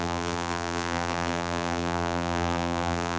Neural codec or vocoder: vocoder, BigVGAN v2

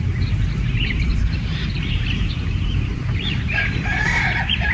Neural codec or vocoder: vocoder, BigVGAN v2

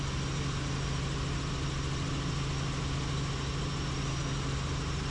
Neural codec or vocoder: none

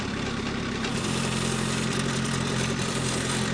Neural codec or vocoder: vocoder, BigVGAN v2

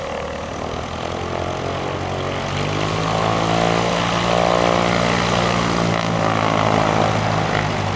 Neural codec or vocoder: none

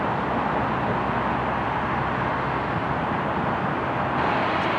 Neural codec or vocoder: none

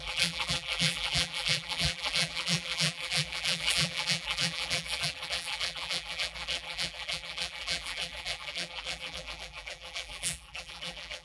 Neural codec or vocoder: vocoder, BigVGAN v2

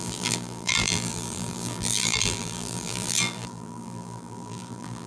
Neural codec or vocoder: vocoder, BigVGAN v2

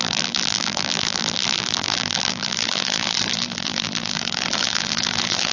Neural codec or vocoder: vocoder, BigVGAN v2